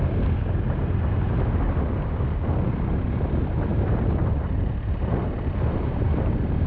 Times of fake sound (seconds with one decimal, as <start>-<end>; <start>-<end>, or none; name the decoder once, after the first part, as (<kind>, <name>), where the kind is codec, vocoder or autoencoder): 3.7-6.7 (vocoder, BigVGAN v2)